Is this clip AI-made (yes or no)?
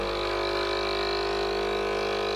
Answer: no